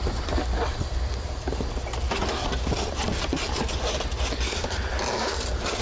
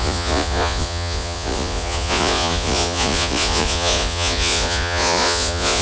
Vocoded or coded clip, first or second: second